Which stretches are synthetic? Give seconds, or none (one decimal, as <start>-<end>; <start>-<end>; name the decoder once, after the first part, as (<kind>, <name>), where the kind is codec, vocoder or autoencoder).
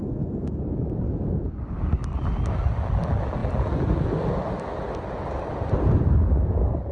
0.0-0.5 (codec, SNAC)